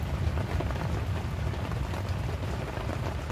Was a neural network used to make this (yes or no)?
no